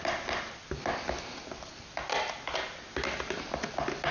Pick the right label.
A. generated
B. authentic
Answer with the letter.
B